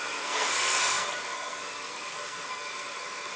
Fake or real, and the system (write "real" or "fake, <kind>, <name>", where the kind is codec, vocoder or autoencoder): fake, codec, SNAC